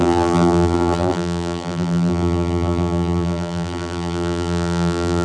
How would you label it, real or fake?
fake